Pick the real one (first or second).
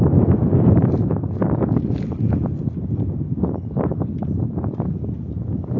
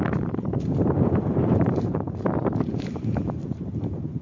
first